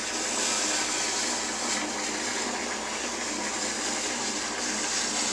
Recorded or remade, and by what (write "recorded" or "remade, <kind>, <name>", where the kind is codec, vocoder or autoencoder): recorded